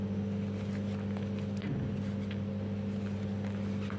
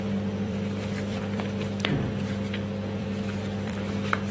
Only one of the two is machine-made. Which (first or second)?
second